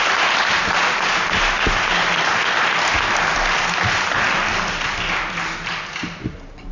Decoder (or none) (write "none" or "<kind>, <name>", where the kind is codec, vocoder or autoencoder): none